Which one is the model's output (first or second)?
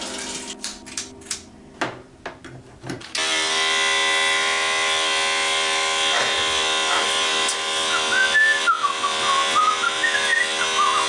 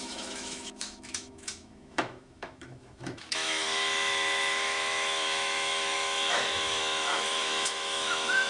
second